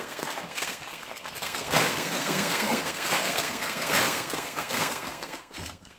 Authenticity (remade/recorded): remade